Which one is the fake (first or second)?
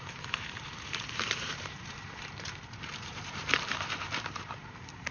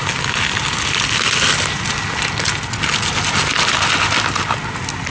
first